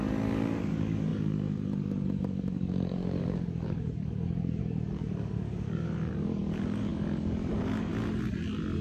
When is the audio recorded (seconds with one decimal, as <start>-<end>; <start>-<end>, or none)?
7.9-8.8